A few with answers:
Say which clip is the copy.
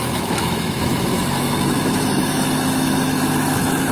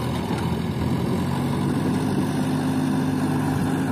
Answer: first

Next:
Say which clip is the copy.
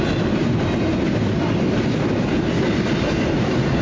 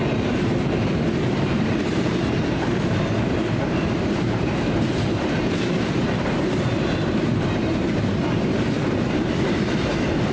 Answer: second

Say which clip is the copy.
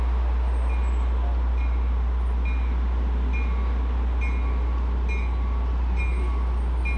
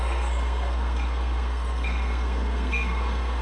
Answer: second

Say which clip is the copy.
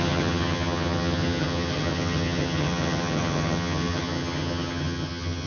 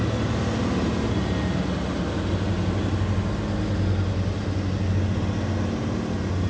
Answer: first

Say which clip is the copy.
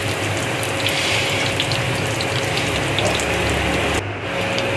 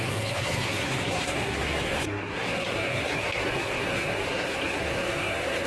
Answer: second